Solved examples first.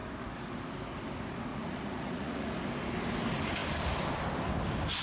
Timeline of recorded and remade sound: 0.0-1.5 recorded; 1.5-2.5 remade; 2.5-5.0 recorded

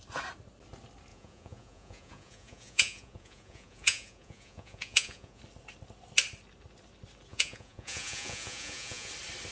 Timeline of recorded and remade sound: 0.0-1.1 recorded; 1.1-5.4 remade; 5.4-7.3 recorded; 7.3-9.1 remade; 9.1-9.5 recorded

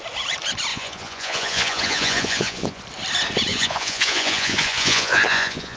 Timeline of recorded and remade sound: 0.0-0.7 recorded; 0.7-2.8 remade; 2.8-3.5 recorded; 3.5-5.8 remade

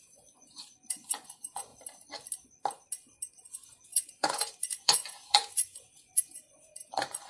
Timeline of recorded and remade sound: 0.0-1.7 remade; 1.7-3.3 recorded; 3.3-7.3 remade